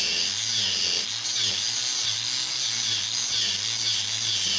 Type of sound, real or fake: real